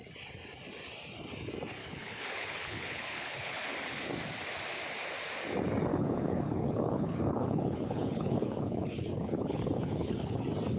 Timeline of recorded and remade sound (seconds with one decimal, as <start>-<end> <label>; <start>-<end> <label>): 0.0-1.8 recorded; 1.8-3.7 remade; 3.7-5.9 recorded; 5.9-10.4 remade; 10.4-10.8 recorded